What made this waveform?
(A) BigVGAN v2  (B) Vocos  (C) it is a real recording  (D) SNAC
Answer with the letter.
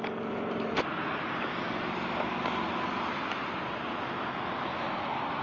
C